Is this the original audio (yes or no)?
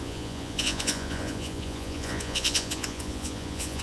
no